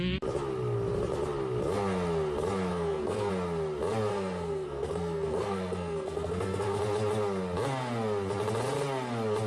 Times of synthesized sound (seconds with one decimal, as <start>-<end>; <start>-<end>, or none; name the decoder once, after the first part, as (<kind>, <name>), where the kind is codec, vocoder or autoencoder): 2.7-3.3 (codec, SNAC); 4.1-6.8